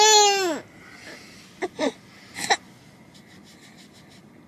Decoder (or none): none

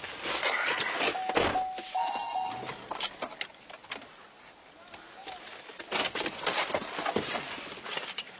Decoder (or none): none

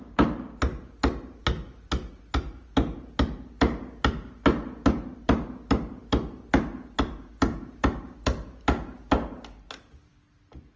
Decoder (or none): none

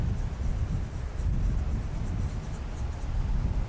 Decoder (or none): none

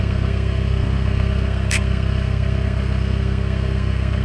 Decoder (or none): codec, SNAC